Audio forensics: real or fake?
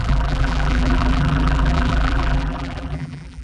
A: fake